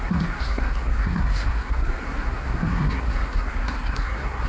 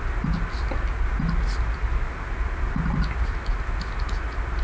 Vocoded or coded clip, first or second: first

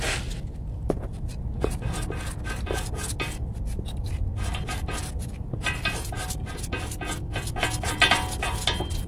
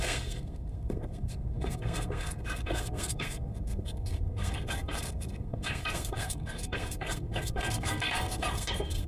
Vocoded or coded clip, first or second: second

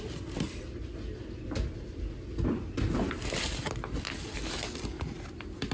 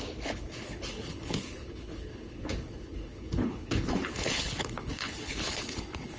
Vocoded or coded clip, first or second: second